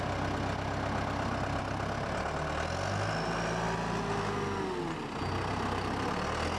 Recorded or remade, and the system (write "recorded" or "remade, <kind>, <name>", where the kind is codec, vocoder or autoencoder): recorded